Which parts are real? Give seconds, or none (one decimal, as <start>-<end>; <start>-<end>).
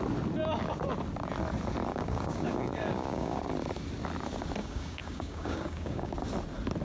0.0-1.9; 3.4-4.6; 6.1-6.8